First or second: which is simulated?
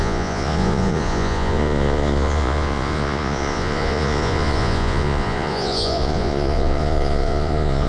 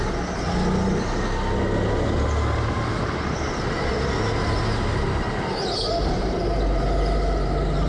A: first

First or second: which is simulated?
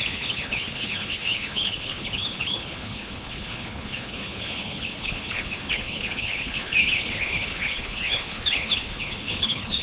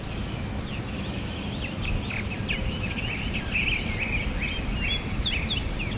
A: first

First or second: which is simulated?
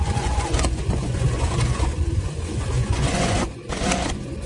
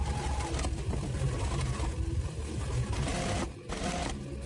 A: first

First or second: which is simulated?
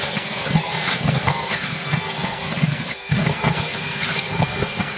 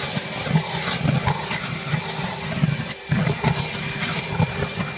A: first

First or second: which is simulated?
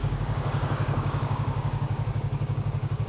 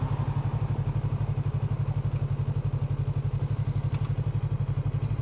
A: first